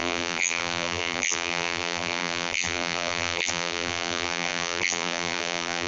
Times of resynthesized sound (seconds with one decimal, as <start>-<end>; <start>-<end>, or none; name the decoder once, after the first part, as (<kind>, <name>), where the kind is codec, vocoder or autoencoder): 0.0-5.9 (vocoder, BigVGAN v2)